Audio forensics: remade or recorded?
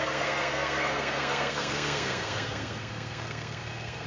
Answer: remade